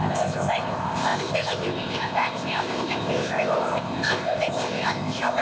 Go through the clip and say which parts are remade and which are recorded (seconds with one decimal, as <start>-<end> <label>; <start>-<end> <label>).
0.0-5.4 remade